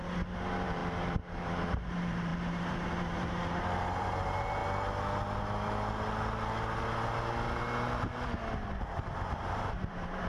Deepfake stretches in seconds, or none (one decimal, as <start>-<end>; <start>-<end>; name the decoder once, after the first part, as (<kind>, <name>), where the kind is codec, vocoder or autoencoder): 0.0-4.6 (vocoder, BigVGAN v2); 9.3-10.3